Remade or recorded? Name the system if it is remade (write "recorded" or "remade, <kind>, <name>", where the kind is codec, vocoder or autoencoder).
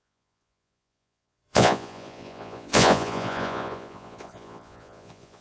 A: remade, vocoder, Vocos